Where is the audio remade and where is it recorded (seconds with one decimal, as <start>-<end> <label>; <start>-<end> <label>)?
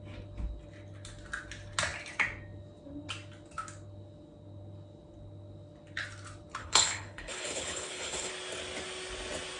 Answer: 0.0-6.6 recorded; 6.6-8.3 remade; 8.3-9.6 recorded